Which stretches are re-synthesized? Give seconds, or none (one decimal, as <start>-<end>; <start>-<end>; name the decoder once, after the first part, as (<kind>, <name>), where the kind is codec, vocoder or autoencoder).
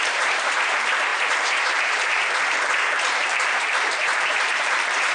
0.0-5.1 (vocoder, BigVGAN v2)